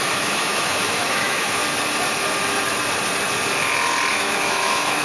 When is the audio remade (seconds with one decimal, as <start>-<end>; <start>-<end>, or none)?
0.0-1.6; 4.1-5.0